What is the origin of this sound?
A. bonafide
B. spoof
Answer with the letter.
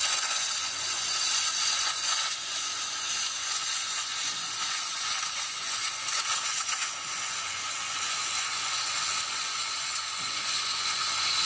B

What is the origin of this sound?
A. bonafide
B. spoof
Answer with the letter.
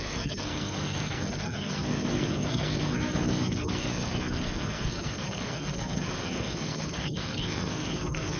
B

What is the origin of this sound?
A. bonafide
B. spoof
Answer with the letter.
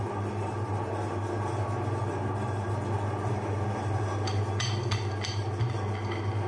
A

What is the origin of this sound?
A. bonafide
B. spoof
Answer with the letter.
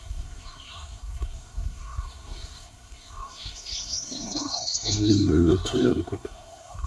B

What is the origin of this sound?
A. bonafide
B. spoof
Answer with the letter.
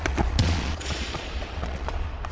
B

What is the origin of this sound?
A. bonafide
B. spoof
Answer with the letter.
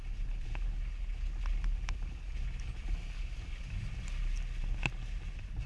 A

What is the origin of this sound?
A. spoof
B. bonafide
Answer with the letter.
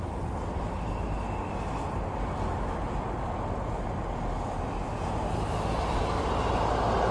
B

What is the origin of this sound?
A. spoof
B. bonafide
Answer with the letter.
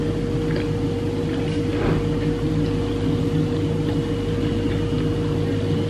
B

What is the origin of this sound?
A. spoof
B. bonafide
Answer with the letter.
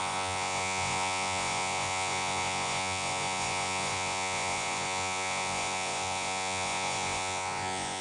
A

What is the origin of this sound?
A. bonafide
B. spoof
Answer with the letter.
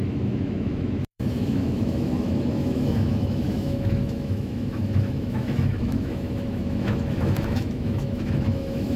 B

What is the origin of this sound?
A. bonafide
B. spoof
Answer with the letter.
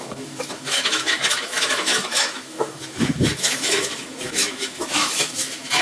B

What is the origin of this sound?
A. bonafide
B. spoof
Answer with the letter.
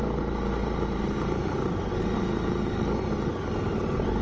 A